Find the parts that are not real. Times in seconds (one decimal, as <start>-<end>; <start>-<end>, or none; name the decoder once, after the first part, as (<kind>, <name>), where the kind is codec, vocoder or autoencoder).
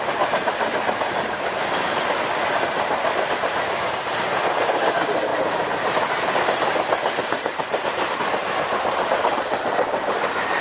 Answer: 5.3-8.1 (vocoder, BigVGAN v2)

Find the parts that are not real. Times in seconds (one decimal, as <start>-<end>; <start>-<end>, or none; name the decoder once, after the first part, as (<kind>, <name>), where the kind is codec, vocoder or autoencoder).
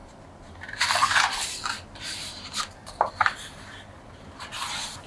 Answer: 0.0-5.1 (vocoder, BigVGAN v2)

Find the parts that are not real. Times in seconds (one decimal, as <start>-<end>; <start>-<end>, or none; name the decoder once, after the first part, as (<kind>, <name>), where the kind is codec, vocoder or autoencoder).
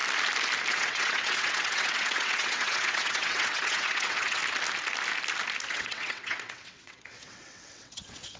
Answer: 0.7-4.4 (vocoder, WaveNeXt); 5.7-8.4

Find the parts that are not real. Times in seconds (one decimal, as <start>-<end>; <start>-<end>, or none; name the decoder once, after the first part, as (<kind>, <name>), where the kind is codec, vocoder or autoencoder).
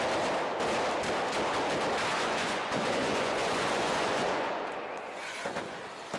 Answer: 2.1-5.8 (vocoder, Vocos)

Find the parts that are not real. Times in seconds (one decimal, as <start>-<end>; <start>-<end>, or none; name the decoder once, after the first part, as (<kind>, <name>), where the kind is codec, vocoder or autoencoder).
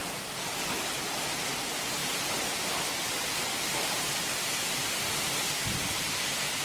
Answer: 0.0-2.0 (vocoder, BigVGAN v2); 5.0-6.6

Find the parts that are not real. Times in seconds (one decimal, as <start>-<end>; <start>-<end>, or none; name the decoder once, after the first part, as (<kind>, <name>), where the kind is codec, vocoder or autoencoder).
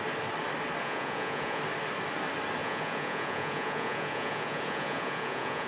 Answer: 0.8-1.6 (vocoder, Vocos); 2.6-5.7